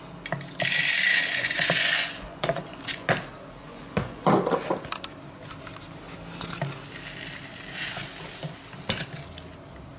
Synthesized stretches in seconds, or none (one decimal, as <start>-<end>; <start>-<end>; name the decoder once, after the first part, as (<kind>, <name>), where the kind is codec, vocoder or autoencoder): 1.1-3.1 (vocoder, Vocos); 3.6-4.3